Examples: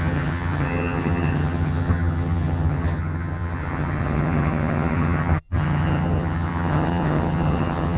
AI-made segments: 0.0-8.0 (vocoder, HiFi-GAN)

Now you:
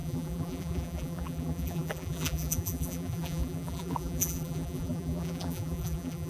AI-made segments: 0.0-6.3 (vocoder, BigVGAN v2)

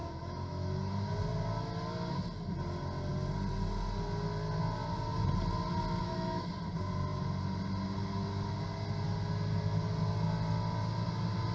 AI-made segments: 0.0-0.9 (autoencoder, DAC-VAE); 6.0-6.5

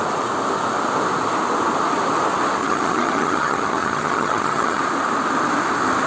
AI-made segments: 2.6-4.8 (vocoder, HiFi-GAN)

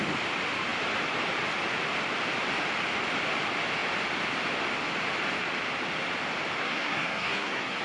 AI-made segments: 6.6-7.8 (codec, SNAC)

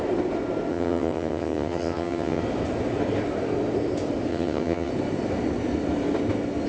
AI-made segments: 0.7-2.4 (vocoder, HiFi-GAN); 4.3-4.9

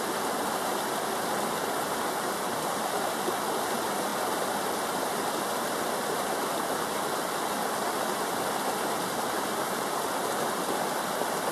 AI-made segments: none